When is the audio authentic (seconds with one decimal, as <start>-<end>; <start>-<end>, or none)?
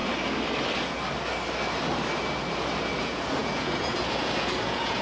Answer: 0.0-2.5